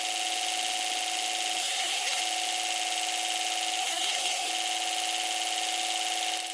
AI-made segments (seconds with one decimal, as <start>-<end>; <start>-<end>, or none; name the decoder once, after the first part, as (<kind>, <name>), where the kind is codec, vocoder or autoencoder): 1.6-2.2 (codec, SNAC); 3.8-4.5